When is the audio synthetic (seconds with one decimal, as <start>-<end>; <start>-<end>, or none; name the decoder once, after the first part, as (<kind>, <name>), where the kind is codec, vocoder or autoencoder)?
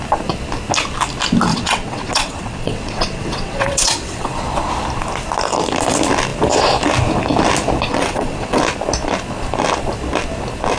1.5-4.4 (vocoder, WaveNeXt); 7.9-8.6